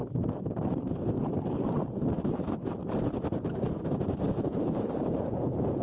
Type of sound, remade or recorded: remade